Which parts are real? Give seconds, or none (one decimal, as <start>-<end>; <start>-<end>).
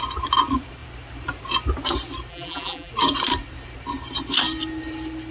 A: 0.0-2.3; 2.9-5.3